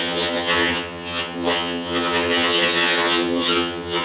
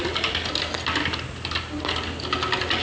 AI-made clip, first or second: first